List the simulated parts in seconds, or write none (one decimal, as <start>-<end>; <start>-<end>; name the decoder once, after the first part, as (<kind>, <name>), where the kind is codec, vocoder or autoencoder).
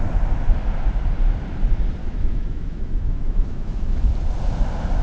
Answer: 2.0-4.1 (autoencoder, DAC-VAE)